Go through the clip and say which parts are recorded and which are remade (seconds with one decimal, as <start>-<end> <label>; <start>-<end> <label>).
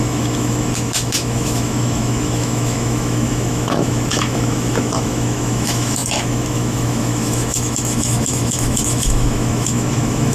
0.0-10.3 remade